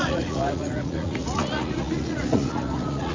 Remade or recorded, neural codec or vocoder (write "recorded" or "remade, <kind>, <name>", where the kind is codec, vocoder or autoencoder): remade, vocoder, Vocos